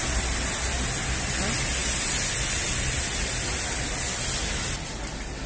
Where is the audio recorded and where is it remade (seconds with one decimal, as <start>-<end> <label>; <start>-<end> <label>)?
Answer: 0.0-1.8 recorded; 1.8-3.0 remade; 3.0-5.5 recorded